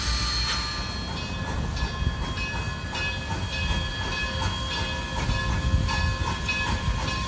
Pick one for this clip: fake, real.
real